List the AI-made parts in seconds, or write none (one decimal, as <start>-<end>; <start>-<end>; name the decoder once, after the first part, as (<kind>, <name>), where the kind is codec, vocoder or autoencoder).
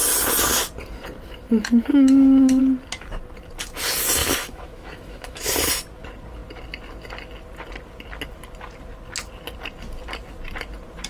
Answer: 1.9-2.6 (autoencoder, DAC-VAE); 4.2-5.5